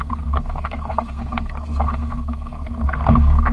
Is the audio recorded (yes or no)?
no